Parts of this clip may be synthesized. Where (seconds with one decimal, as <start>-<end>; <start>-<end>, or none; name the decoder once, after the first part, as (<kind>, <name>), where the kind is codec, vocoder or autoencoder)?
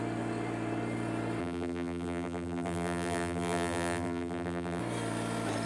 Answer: 1.4-4.8 (vocoder, BigVGAN v2)